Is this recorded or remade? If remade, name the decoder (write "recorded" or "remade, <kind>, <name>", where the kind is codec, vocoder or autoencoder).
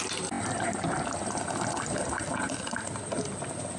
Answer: recorded